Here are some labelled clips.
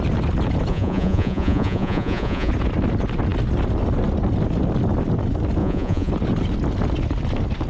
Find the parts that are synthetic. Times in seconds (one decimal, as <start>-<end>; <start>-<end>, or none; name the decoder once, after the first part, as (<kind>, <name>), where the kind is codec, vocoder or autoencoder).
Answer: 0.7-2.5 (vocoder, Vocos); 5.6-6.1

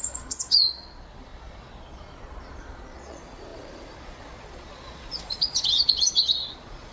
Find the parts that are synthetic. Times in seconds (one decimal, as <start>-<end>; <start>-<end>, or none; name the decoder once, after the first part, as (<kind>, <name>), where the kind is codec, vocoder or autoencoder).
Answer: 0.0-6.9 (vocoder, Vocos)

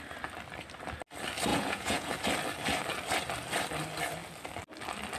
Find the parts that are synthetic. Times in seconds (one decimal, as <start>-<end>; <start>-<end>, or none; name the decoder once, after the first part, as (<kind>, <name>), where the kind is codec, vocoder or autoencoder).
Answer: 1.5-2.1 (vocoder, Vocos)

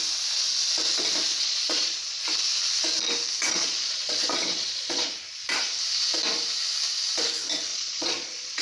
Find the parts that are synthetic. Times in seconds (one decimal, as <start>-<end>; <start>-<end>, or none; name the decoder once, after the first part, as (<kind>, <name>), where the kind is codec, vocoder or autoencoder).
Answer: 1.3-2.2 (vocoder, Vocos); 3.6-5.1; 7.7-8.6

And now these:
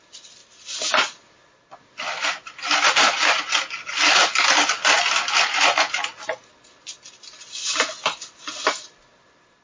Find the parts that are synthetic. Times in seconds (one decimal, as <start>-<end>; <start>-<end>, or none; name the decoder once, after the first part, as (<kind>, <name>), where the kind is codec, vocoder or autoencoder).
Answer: none